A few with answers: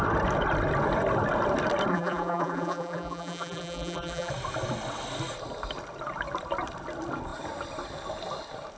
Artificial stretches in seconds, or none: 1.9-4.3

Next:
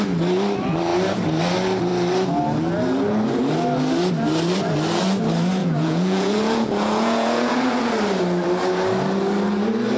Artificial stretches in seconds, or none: 5.6-7.9

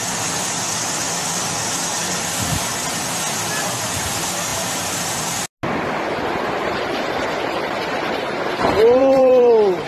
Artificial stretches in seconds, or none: 9.0-9.9

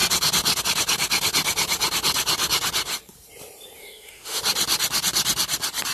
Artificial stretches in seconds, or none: 3.8-4.4